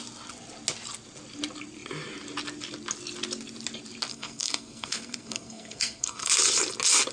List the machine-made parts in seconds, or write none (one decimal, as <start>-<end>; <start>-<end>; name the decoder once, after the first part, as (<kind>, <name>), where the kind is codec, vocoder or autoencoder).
4.1-6.3 (codec, SNAC)